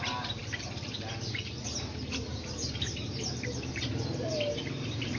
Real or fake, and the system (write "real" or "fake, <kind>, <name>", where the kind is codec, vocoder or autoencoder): fake, vocoder, BigVGAN v2